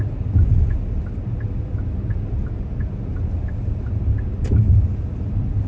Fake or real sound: real